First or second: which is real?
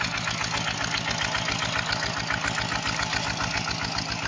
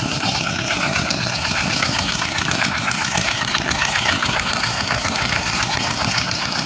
first